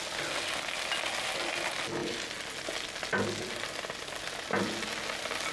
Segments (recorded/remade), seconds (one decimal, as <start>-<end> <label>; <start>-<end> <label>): 0.0-5.5 recorded